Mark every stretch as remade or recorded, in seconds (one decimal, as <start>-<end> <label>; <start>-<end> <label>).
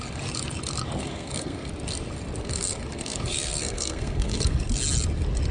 0.0-1.0 recorded; 1.0-1.7 remade; 1.7-2.4 recorded; 2.4-4.6 remade; 4.6-5.5 recorded